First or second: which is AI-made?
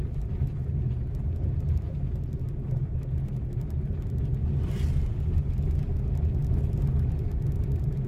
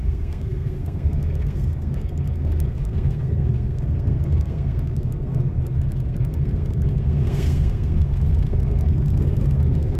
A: second